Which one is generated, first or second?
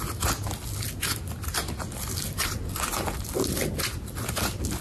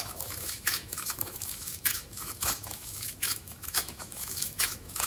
second